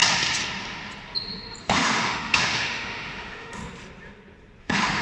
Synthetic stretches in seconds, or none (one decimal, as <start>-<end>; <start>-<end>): 1.6-3.6; 4.6-5.0